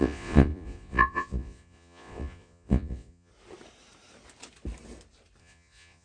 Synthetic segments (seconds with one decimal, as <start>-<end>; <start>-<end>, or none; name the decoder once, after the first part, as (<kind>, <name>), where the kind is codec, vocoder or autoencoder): 0.0-3.3 (vocoder, Vocos); 5.4-6.0